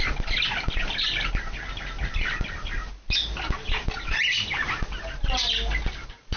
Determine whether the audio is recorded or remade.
recorded